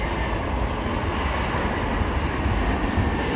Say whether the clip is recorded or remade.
recorded